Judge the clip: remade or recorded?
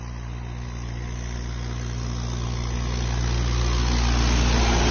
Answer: recorded